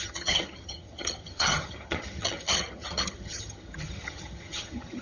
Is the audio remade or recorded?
remade